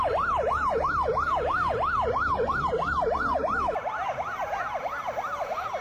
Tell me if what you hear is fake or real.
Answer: real